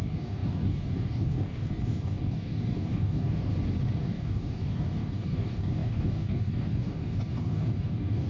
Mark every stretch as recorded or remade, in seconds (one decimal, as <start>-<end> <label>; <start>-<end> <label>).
0.0-3.5 remade; 3.5-4.0 recorded; 4.0-8.3 remade